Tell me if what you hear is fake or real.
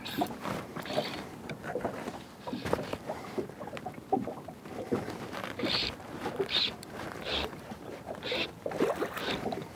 fake